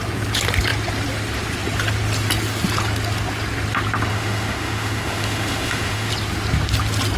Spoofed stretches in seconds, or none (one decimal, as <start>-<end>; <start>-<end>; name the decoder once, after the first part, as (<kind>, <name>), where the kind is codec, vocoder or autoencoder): 4.1-6.1 (autoencoder, DAC-VAE)